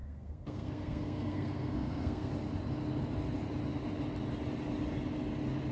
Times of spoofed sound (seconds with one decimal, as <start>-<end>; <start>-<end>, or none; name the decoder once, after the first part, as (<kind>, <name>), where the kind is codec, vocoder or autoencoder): 0.0-2.3 (codec, SNAC)